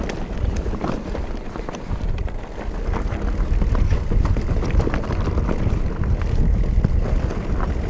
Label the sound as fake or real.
real